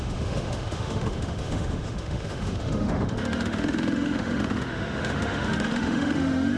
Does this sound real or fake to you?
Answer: fake